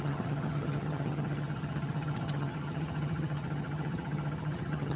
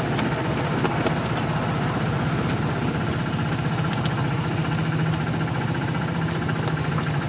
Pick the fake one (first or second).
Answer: first